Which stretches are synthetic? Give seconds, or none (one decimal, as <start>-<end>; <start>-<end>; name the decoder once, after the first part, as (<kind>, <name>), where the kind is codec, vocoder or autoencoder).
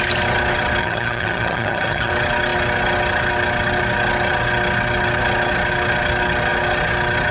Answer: 0.8-2.1 (vocoder, HiFi-GAN)